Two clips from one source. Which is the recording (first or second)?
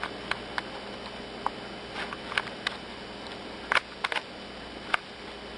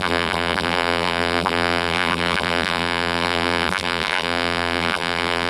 first